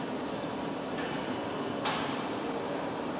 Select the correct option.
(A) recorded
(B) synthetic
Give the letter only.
B